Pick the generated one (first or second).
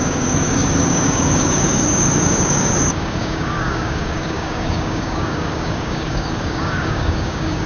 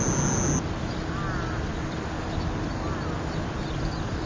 first